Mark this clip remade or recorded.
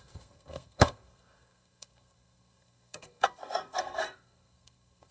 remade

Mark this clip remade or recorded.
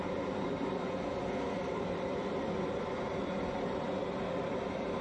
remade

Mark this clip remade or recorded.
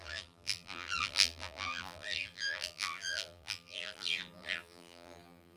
remade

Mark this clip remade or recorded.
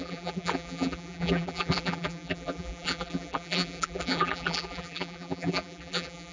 remade